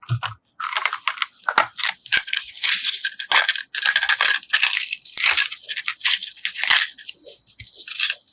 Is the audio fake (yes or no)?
no